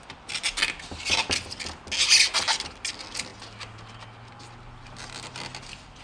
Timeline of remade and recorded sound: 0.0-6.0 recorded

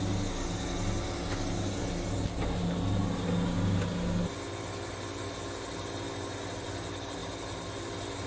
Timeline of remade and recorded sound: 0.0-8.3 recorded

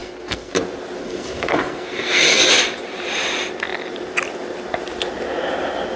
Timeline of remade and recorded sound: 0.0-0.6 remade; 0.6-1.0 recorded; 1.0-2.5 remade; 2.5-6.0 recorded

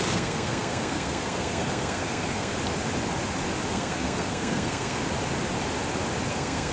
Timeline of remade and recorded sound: 0.0-2.5 remade; 2.5-3.7 recorded; 3.7-5.0 remade; 5.0-6.3 recorded; 6.3-6.7 remade

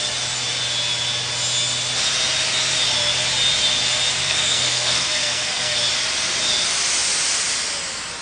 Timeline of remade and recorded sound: 0.0-4.2 recorded; 4.2-5.8 remade; 5.8-8.2 recorded

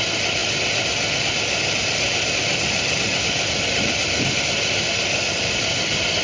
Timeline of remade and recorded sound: 0.0-6.2 recorded

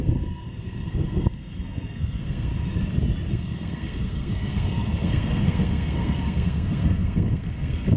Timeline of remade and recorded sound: 0.0-2.5 remade; 2.5-3.3 recorded; 3.3-8.0 remade